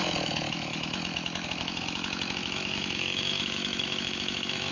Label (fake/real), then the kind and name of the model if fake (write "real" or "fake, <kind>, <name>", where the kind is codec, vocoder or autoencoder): fake, autoencoder, DAC-VAE